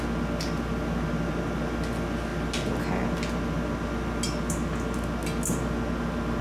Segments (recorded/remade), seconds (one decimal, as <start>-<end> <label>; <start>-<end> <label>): 0.0-6.4 recorded